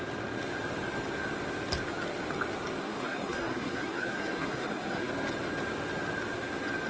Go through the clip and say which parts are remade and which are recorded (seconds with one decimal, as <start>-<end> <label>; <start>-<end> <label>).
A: 0.0-2.8 recorded; 2.8-5.1 remade; 5.1-6.9 recorded